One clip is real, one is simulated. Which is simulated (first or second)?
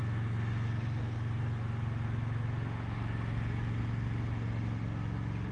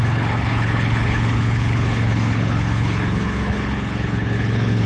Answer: second